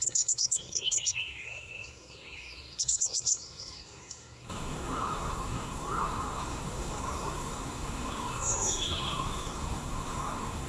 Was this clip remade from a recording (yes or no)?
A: yes